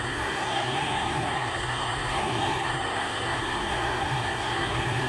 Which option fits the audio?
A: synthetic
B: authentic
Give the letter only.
A